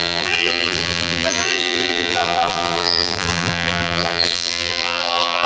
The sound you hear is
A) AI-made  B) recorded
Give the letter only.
A